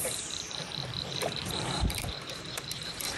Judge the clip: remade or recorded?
remade